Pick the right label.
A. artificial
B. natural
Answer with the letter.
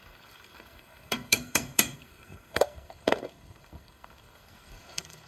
A